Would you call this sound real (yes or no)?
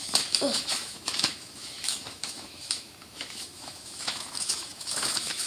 no